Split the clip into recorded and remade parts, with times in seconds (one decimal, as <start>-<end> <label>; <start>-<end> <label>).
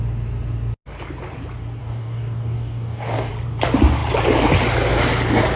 0.0-1.8 recorded; 1.8-3.3 remade; 3.3-5.6 recorded